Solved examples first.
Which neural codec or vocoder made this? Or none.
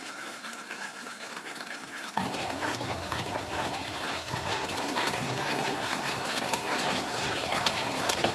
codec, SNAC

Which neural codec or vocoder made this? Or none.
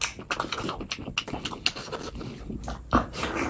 none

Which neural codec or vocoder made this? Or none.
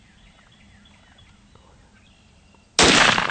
none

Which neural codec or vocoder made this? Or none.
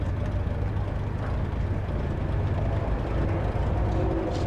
none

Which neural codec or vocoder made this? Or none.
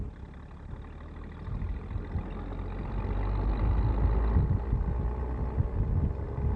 none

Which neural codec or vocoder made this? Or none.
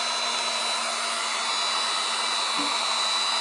none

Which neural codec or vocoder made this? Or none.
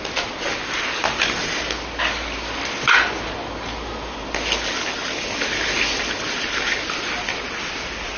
none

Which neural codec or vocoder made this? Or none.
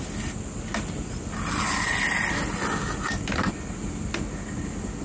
none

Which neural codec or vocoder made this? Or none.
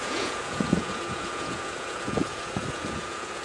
vocoder, Vocos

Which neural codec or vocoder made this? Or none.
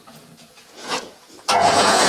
vocoder, Vocos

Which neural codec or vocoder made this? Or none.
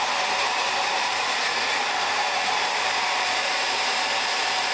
vocoder, BigVGAN v2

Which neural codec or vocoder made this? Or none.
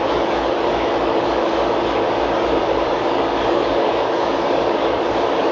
codec, DAC